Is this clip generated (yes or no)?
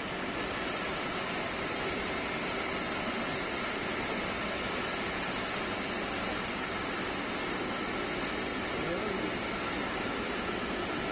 no